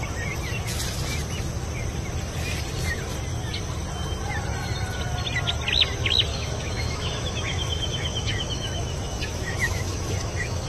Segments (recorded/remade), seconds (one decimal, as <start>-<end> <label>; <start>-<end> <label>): 0.0-6.3 recorded; 6.3-10.7 remade